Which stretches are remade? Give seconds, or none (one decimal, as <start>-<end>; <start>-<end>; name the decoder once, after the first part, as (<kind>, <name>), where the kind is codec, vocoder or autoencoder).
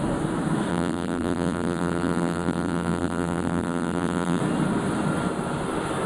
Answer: 0.7-4.4 (vocoder, BigVGAN v2)